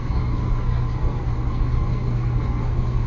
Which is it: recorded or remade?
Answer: remade